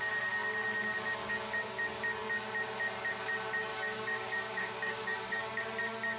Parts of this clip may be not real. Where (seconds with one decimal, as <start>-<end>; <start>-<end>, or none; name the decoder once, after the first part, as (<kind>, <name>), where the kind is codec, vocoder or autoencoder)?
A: 3.7-5.6 (codec, DAC)